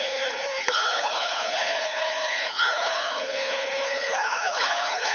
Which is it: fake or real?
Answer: fake